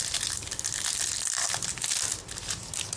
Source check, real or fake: real